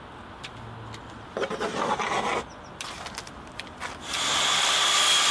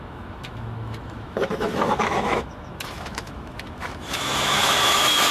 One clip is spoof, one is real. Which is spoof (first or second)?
second